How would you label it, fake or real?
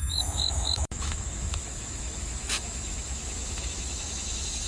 fake